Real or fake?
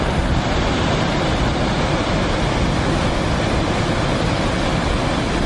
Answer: real